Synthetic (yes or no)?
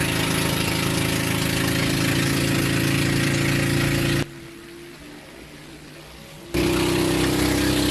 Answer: no